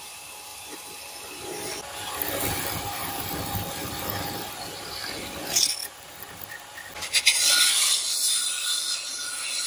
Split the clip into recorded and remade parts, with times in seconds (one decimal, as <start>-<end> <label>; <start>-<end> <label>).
0.0-0.5 recorded; 0.5-1.3 remade; 1.3-3.0 recorded; 3.0-4.0 remade; 4.0-9.7 recorded